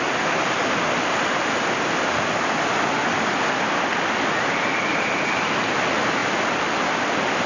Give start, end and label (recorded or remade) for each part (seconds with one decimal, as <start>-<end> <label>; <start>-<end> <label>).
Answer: 0.0-7.5 recorded